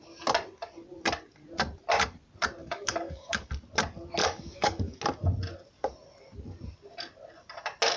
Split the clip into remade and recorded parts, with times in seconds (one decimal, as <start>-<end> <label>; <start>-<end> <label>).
0.0-2.6 recorded; 2.6-3.5 remade; 3.5-4.2 recorded; 4.2-5.0 remade; 5.0-8.0 recorded